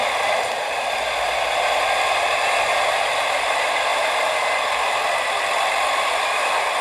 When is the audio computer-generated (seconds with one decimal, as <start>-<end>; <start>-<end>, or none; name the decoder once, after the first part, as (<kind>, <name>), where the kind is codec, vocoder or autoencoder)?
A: 0.0-6.8 (vocoder, BigVGAN v2)